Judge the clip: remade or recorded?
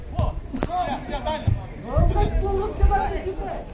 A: recorded